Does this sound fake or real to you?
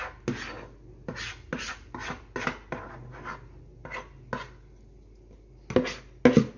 real